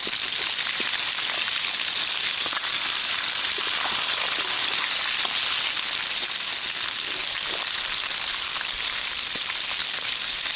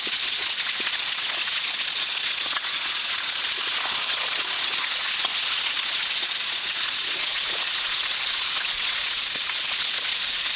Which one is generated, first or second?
second